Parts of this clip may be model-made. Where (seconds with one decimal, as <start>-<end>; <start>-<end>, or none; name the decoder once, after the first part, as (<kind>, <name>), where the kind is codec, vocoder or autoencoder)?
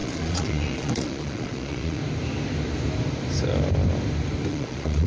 0.0-2.0 (vocoder, Vocos); 4.5-5.1